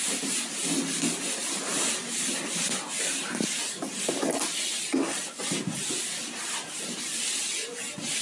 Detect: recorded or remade recorded